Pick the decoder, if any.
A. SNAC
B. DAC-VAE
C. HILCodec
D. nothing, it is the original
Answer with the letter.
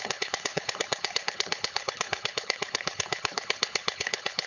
C